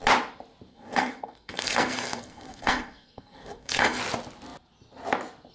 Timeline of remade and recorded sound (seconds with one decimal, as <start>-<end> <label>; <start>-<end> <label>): 0.0-0.7 recorded; 0.7-4.0 remade; 4.0-5.5 recorded

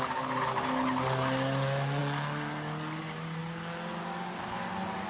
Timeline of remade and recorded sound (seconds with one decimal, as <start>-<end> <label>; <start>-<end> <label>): 0.0-5.1 recorded

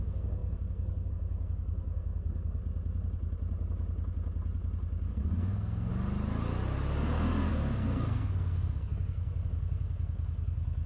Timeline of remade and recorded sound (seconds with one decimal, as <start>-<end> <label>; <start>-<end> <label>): 0.0-2.6 remade; 2.6-5.1 recorded; 5.1-5.9 remade; 5.9-7.5 recorded; 7.5-10.9 remade